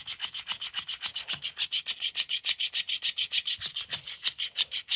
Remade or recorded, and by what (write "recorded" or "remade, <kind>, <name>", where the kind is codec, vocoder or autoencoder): recorded